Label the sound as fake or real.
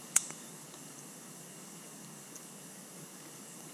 fake